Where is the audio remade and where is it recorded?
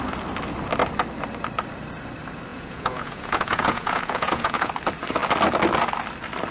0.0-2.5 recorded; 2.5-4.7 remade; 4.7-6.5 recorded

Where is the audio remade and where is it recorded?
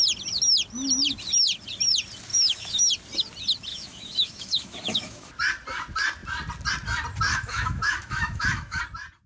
0.0-2.3 recorded; 2.3-2.9 remade; 2.9-3.7 recorded; 3.7-5.3 remade; 5.3-7.3 recorded; 7.3-8.8 remade; 8.8-9.3 recorded